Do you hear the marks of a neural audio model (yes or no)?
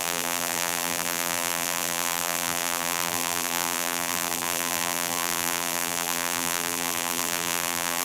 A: yes